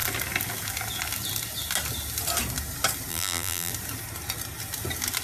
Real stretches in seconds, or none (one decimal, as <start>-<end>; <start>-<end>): 0.0-3.1; 3.7-5.2